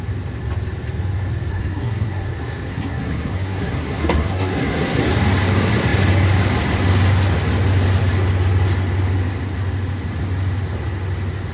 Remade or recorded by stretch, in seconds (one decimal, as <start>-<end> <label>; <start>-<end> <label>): 0.0-1.5 recorded; 1.5-2.3 remade; 2.3-2.7 recorded; 2.7-5.0 remade; 5.0-11.5 recorded